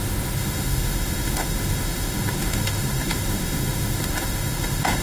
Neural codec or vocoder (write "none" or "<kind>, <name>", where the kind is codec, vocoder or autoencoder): autoencoder, DAC-VAE